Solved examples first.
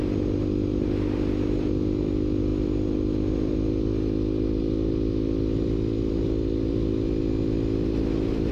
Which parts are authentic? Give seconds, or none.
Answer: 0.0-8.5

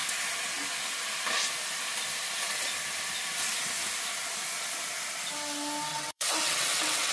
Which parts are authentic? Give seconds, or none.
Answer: 0.0-5.9

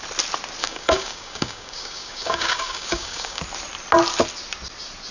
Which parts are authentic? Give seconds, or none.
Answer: 0.0-0.6; 3.4-5.1

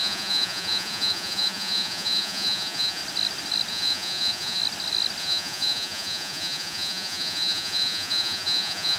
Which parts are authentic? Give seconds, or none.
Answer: 3.0-3.7; 4.6-5.2

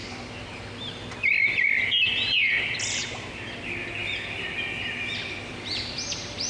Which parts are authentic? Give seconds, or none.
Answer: 0.0-6.5

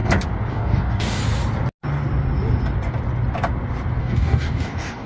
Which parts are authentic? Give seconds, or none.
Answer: 0.0-0.5; 1.2-4.0